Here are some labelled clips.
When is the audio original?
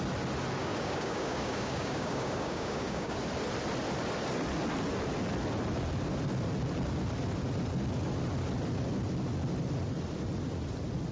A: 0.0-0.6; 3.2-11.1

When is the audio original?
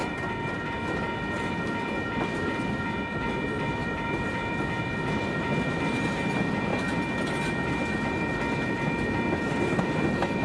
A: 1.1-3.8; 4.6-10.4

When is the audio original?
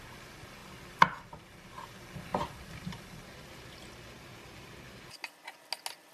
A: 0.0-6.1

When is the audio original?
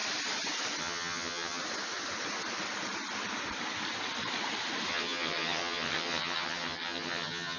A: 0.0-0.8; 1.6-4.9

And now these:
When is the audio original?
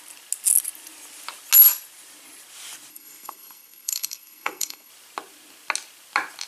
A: 0.0-2.9; 4.9-6.5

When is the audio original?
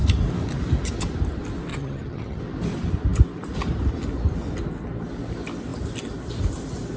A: 0.0-1.7; 2.4-7.0